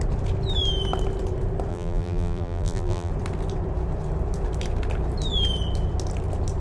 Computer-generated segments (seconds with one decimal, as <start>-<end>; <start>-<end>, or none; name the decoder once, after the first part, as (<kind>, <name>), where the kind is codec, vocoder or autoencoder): 1.7-3.1 (vocoder, BigVGAN v2)